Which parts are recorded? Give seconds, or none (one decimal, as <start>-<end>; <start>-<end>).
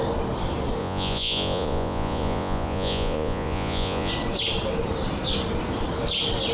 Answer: 0.0-0.8; 4.1-6.5